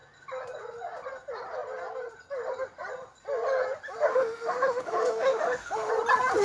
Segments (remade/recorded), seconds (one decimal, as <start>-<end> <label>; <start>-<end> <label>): 0.0-4.1 recorded; 4.1-5.9 remade; 5.9-6.4 recorded